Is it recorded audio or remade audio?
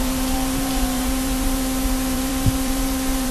remade